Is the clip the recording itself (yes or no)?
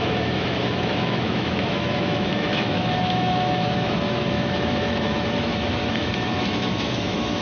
no